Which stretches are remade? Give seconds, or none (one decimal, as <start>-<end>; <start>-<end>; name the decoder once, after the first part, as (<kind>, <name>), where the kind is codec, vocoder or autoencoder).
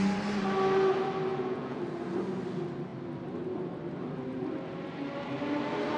1.3-1.8 (vocoder, Vocos)